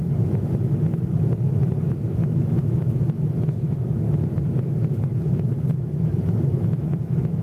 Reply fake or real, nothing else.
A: fake